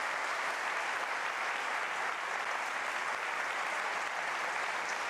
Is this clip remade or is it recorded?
recorded